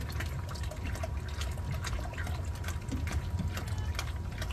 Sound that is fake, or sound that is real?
real